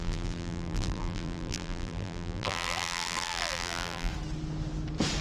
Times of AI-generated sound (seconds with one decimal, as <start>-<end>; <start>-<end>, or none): 0.0-4.1